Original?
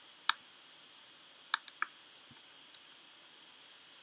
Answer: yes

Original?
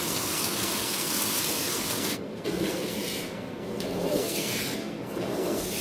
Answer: no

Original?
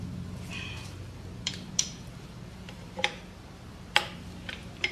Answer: no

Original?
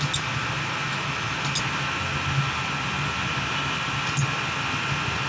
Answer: yes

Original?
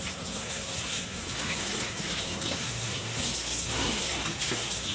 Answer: no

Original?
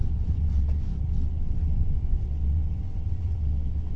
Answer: no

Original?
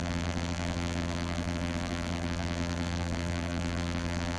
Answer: no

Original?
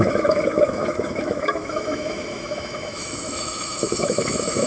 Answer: no